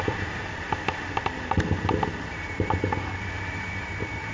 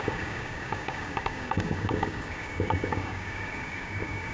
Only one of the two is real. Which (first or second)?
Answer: first